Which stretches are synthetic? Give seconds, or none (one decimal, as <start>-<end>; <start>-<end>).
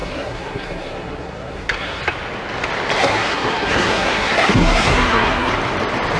0.0-2.0; 3.0-5.5